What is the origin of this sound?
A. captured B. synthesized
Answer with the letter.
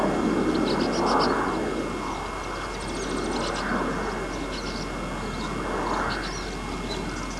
A